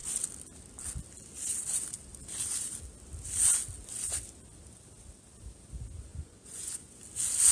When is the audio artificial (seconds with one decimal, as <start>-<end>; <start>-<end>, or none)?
6.1-7.0